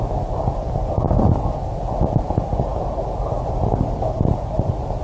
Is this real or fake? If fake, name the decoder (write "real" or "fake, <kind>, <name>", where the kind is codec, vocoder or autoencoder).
real